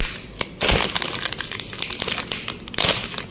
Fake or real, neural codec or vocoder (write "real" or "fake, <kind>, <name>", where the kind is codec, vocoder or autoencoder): real